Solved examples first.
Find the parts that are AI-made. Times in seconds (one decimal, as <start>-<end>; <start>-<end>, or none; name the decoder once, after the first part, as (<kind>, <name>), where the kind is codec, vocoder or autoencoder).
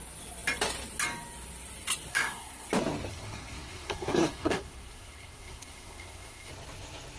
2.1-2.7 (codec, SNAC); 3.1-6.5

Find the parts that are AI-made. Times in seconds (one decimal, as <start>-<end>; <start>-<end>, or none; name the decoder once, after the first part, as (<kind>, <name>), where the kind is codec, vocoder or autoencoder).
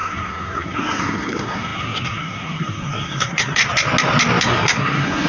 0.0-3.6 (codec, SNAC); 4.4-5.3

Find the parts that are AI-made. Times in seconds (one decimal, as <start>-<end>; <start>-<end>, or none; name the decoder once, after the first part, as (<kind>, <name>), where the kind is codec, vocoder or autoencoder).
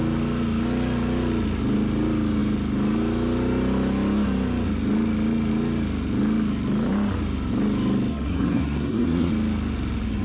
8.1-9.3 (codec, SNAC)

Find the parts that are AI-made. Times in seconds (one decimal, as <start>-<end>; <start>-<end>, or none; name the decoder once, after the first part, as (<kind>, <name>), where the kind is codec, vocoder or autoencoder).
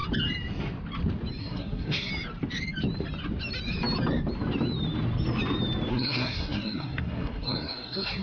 1.4-2.1 (codec, SNAC); 5.9-8.2